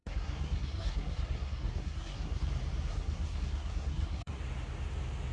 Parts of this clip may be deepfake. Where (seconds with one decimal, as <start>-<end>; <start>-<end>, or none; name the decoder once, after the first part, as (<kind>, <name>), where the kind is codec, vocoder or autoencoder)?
0.0-2.5 (codec, SNAC); 2.9-4.4